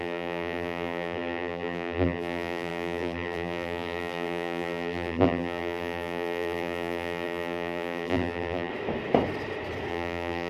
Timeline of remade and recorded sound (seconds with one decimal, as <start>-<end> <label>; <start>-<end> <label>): 0.0-8.7 remade; 8.7-9.9 recorded; 9.9-10.5 remade